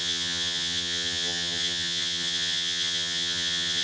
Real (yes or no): no